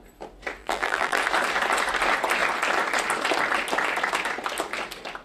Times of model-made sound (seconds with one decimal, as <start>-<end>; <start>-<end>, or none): 0.6-1.2